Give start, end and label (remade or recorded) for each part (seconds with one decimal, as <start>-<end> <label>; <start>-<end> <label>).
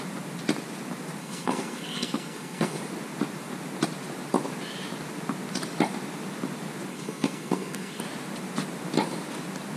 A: 0.0-1.2 recorded; 1.2-2.8 remade; 2.8-6.9 recorded; 6.9-8.0 remade; 8.0-9.8 recorded